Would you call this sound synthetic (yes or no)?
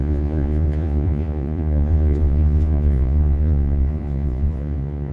yes